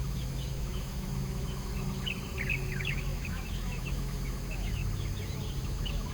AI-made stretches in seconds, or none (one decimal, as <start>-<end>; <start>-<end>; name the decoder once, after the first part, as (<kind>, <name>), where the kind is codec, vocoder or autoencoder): 0.0-1.7 (autoencoder, DAC-VAE); 2.7-4.8; 5.6-6.1